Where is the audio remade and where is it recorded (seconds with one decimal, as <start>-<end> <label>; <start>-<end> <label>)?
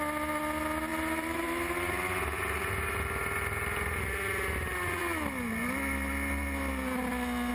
0.0-0.9 recorded; 0.9-1.9 remade; 1.9-7.5 recorded